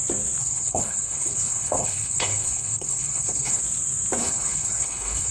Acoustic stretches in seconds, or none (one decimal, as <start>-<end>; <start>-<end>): 0.0-0.4; 3.6-4.2